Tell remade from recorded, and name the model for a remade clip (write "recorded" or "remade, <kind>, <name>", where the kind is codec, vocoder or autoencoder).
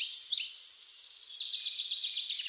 recorded